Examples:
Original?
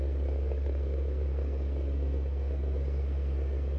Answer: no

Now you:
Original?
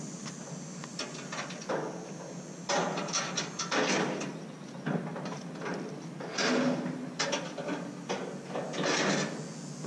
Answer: yes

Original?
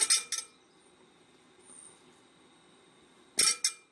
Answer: yes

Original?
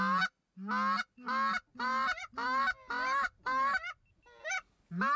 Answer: yes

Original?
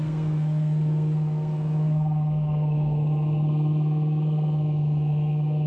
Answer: no